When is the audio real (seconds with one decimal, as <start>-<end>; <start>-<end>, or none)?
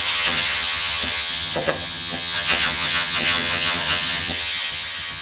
none